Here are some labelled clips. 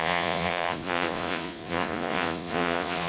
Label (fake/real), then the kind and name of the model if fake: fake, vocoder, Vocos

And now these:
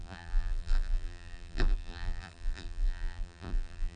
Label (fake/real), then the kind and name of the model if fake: fake, vocoder, BigVGAN v2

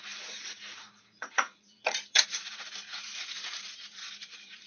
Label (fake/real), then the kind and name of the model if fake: fake, vocoder, Vocos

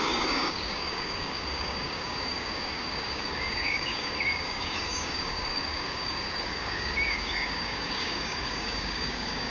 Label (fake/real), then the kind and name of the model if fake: fake, codec, DAC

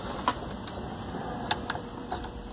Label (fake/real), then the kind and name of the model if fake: real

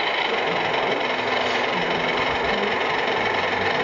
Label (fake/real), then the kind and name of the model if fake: real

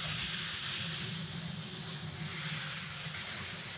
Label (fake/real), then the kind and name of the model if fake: real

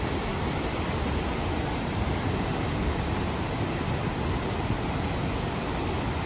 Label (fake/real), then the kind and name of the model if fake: real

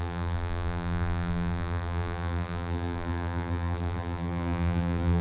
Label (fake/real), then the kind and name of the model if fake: fake, vocoder, BigVGAN v2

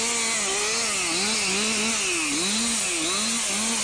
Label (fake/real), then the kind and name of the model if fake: real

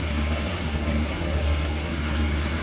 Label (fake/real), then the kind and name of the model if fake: fake, codec, SNAC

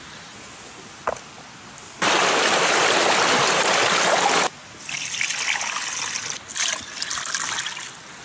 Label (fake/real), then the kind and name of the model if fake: real